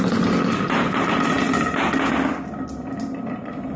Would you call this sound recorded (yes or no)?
yes